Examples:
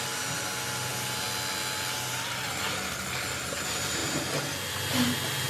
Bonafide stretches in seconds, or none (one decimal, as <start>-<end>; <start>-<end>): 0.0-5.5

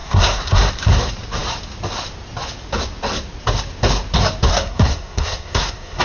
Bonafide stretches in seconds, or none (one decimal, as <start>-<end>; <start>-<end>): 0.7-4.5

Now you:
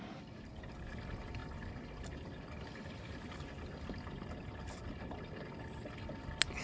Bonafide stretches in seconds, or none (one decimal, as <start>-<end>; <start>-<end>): 0.0-6.6

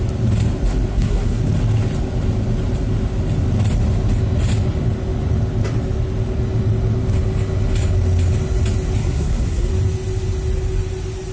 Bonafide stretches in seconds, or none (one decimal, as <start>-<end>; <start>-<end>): 0.0-0.9; 1.4-9.0; 9.7-11.3